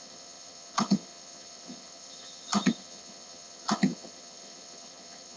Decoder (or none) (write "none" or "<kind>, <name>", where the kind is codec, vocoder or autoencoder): vocoder, HiFi-GAN